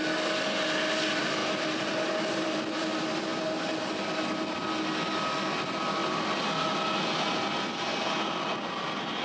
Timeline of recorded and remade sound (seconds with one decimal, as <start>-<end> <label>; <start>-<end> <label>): 0.0-9.2 recorded